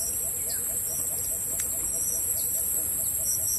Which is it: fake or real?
real